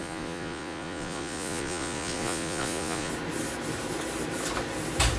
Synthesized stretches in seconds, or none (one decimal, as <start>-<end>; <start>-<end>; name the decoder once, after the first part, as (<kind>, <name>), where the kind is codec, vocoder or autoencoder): 0.0-3.1 (vocoder, Vocos)

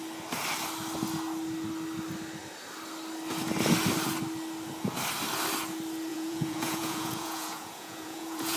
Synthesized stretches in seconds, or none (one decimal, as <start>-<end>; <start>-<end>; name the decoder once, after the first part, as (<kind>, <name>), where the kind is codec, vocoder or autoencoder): 6.1-8.6 (vocoder, Vocos)